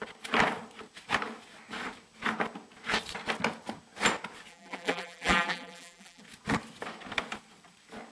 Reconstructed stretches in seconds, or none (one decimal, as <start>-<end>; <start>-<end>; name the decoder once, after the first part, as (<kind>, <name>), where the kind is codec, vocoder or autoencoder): 4.5-6.2 (vocoder, BigVGAN v2)